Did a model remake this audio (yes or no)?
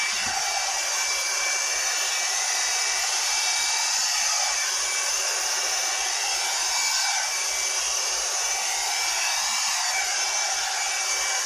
no